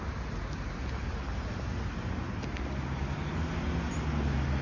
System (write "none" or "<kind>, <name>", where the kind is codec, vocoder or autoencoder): none